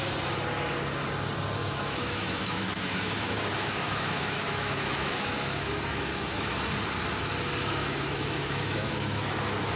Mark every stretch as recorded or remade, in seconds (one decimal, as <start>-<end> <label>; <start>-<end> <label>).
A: 0.0-1.6 recorded; 1.6-6.5 remade; 6.5-7.6 recorded; 7.6-9.3 remade; 9.3-9.8 recorded